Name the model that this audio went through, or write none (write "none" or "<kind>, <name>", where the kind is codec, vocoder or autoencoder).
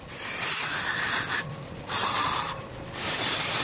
none